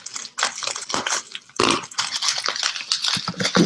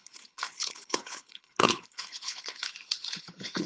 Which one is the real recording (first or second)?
first